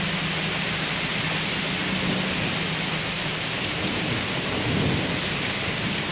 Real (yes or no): yes